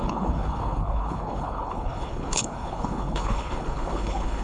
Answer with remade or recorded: remade